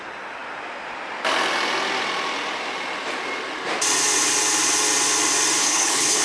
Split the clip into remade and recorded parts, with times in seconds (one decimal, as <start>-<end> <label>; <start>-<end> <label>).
0.0-5.6 recorded; 5.6-6.2 remade